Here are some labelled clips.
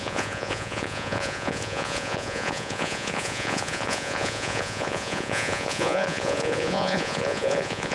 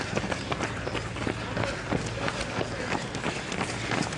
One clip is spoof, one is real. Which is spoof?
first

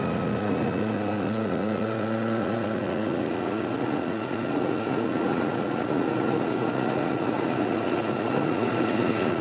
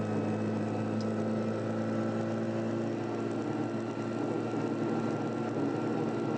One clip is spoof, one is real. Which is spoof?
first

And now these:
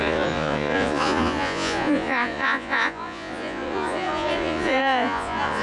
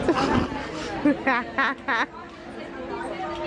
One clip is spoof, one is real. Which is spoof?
first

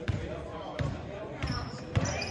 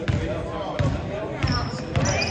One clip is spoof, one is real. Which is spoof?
first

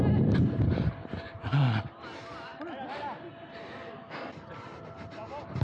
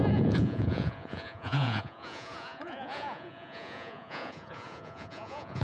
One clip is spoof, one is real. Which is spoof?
second